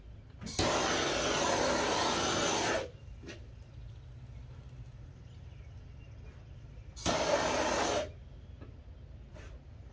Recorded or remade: recorded